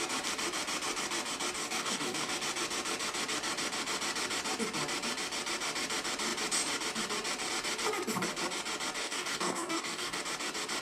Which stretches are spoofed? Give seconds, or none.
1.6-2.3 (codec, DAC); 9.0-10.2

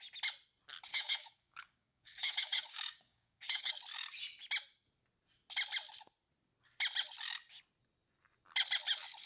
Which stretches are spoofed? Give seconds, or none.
0.9-3.7 (codec, DAC)

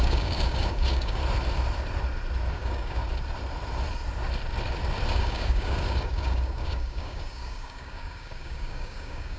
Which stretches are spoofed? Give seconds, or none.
0.0-1.2 (codec, DAC); 2.5-3.0; 5.1-9.4

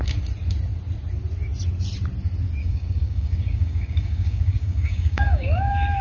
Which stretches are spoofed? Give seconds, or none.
2.6-6.0 (codec, DAC)

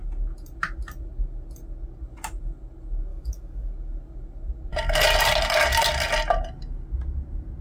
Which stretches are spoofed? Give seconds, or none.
3.1-3.7 (codec, DAC)